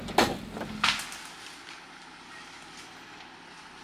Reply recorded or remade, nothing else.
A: recorded